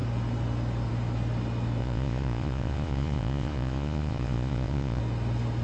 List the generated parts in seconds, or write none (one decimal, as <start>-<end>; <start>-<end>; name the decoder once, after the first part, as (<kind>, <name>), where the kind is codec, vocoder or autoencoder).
1.8-5.0 (vocoder, Vocos)